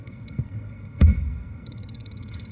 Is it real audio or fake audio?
fake